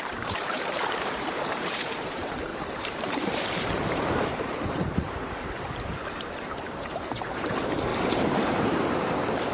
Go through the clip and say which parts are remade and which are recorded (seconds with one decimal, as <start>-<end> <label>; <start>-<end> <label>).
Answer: 0.0-9.5 remade